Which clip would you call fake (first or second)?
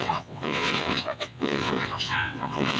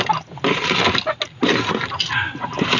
first